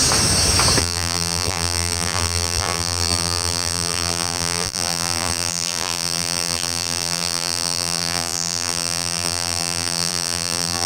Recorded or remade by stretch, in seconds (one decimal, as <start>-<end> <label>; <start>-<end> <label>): 0.0-0.8 recorded; 0.8-10.9 remade